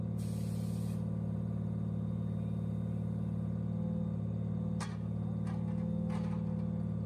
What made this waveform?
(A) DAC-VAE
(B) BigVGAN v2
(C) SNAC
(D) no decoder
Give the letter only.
D